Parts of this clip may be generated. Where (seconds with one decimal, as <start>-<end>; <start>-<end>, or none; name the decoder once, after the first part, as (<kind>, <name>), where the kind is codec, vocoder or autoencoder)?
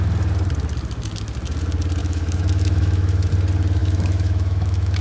2.0-3.3 (autoencoder, DAC-VAE); 3.8-5.0